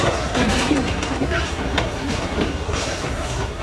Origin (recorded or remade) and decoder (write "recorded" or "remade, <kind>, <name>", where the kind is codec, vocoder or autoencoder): remade, codec, SNAC